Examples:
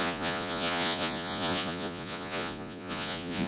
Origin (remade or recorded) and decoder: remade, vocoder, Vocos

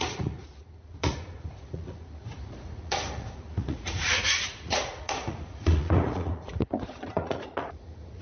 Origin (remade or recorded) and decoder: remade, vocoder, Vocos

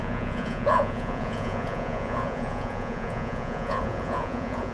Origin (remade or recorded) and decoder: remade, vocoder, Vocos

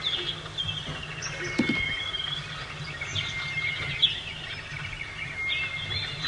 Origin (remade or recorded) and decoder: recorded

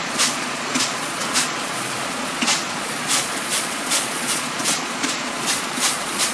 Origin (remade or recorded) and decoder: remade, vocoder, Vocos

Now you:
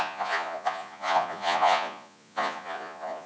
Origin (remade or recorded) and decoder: remade, vocoder, Vocos